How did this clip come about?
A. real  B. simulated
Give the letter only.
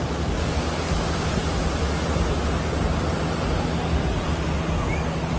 A